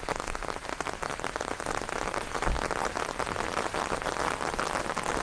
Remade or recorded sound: recorded